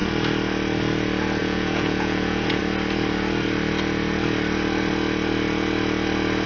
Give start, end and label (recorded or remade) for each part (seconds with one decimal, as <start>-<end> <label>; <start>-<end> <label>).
0.0-1.4 recorded; 1.4-2.6 remade; 2.6-6.5 recorded